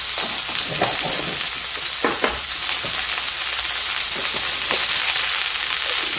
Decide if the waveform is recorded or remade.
recorded